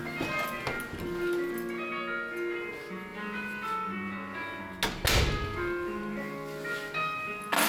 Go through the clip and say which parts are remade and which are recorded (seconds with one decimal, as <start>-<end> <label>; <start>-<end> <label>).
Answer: 0.0-7.7 recorded